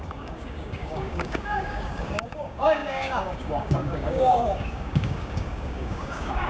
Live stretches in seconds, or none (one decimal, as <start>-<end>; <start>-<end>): none